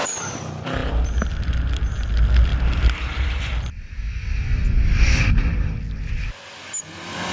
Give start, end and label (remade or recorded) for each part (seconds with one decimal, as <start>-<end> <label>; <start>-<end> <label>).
0.0-2.5 recorded; 2.5-4.1 remade; 4.1-7.3 recorded